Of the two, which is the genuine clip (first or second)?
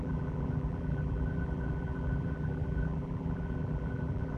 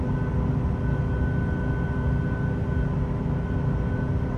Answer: second